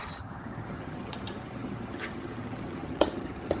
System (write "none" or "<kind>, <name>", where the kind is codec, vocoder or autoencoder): vocoder, HiFi-GAN